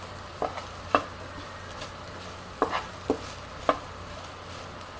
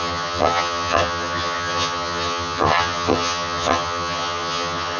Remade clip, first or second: second